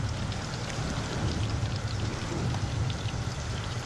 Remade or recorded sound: remade